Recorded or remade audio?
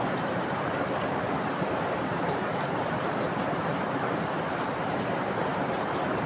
remade